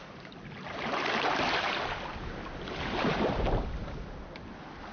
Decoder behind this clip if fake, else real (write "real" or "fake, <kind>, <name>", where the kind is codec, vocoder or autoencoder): real